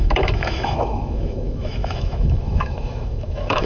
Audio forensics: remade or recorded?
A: remade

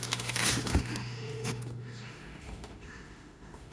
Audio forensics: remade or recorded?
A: remade